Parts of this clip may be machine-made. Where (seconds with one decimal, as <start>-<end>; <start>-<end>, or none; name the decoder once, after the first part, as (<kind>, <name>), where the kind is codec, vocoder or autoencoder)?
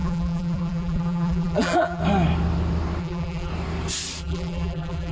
0.0-2.0 (vocoder, BigVGAN v2); 3.0-3.5; 4.2-5.1